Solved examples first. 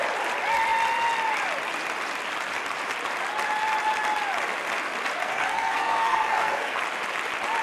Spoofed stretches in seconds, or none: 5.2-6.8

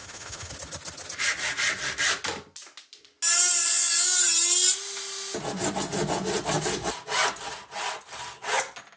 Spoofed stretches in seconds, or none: 0.0-0.5

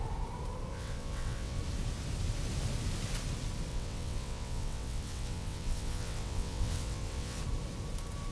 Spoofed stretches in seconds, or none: 0.7-1.6; 3.7-7.4

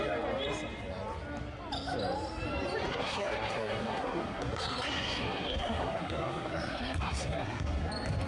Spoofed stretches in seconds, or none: 2.9-7.9